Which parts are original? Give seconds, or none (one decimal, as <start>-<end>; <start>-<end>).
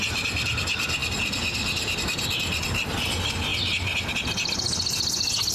0.0-5.5